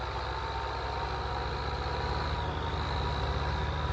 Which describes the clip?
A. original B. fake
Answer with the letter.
A